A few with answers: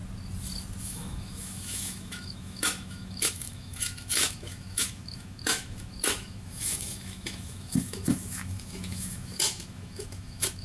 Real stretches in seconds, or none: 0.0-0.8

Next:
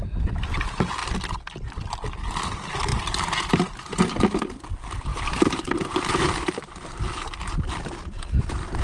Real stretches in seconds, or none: 0.0-2.9; 3.5-5.1; 6.1-8.8

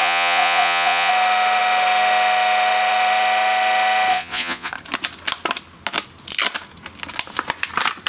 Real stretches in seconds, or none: 1.1-4.1; 4.7-8.1